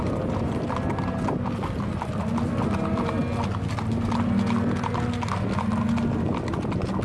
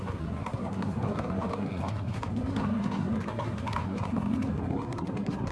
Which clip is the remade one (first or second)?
second